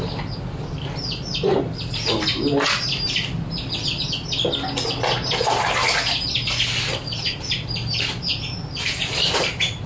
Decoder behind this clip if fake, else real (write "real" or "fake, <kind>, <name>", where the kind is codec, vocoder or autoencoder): real